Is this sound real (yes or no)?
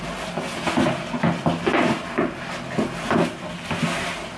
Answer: yes